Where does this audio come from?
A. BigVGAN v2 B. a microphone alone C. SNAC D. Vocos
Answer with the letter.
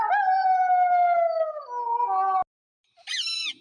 B